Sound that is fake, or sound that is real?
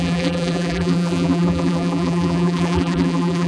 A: fake